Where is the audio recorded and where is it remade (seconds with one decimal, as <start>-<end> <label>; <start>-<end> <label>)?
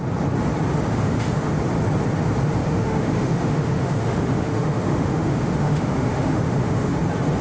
0.0-0.9 recorded; 0.9-1.5 remade; 1.5-2.6 recorded; 2.6-7.0 remade; 7.0-7.4 recorded